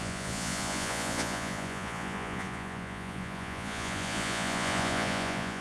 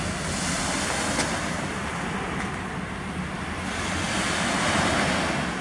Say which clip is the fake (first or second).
first